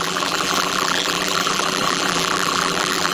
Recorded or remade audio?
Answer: remade